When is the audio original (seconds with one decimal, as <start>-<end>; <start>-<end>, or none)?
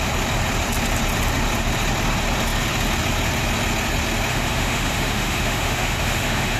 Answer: 0.0-4.3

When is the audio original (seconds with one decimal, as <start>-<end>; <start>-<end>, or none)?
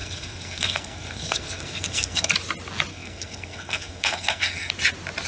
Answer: 2.3-2.9; 4.7-5.3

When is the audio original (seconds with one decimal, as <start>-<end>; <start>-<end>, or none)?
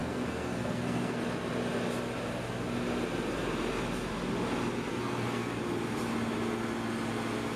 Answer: 1.2-4.9; 5.6-7.6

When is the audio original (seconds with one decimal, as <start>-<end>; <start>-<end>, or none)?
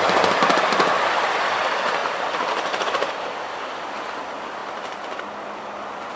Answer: 0.0-2.0; 3.1-4.6; 5.2-6.2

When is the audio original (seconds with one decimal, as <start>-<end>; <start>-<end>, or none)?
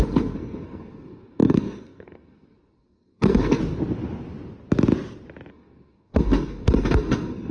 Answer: 3.6-5.5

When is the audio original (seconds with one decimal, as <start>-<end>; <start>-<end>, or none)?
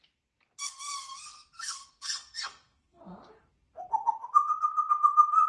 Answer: 0.0-0.6; 3.0-5.5